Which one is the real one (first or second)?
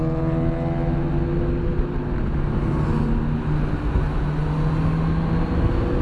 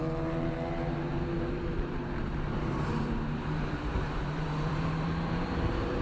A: first